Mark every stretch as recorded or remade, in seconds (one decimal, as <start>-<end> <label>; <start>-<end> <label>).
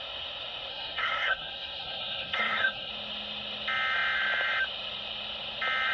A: 0.0-0.7 recorded; 0.7-2.9 remade; 2.9-5.9 recorded